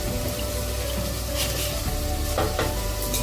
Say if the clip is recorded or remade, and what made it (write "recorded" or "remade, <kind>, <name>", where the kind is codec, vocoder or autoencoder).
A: recorded